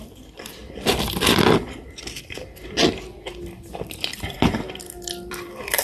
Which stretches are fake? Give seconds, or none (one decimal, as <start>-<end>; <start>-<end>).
0.0-0.6; 4.1-5.8